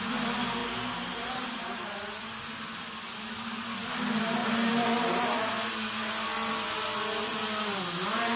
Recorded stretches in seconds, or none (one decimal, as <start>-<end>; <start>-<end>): 0.0-0.6; 2.2-4.4; 5.5-8.4